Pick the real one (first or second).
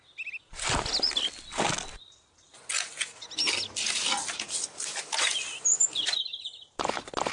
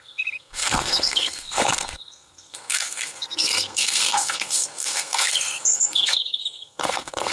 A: first